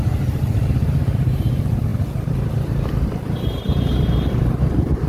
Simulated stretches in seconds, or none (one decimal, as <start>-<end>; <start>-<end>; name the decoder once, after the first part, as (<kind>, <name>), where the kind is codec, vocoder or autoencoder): 0.0-5.1 (vocoder, BigVGAN v2)